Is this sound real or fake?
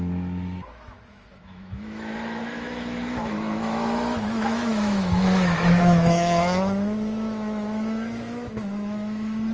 fake